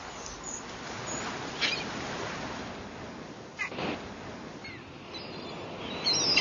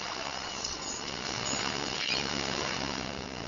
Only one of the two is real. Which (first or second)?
first